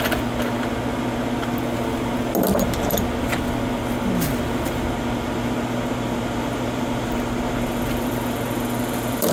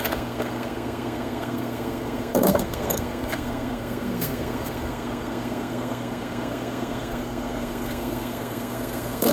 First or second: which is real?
first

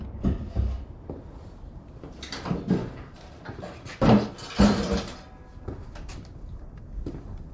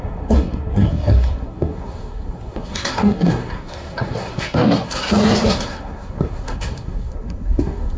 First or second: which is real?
first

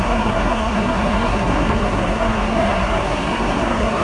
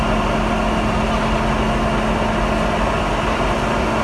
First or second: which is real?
second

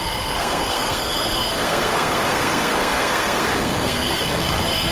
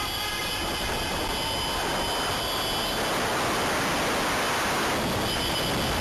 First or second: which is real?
second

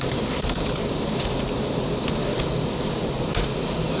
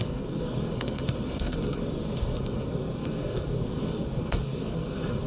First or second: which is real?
first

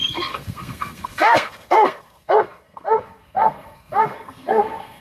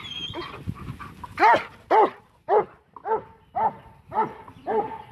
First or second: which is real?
second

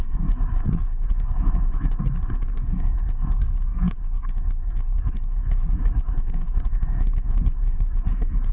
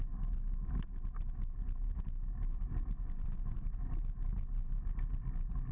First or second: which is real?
second